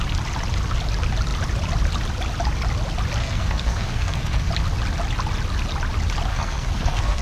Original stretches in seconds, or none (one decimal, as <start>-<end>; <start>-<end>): 0.0-3.2; 4.5-6.3